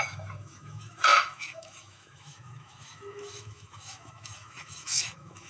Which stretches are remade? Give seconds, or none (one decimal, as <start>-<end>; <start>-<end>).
0.0-5.5